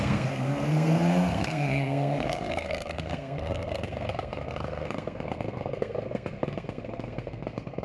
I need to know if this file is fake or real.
fake